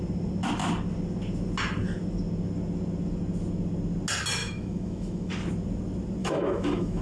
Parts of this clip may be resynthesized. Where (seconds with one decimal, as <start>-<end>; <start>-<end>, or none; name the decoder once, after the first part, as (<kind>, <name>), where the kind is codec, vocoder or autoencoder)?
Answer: 4.4-5.3 (autoencoder, DAC-VAE); 6.2-7.0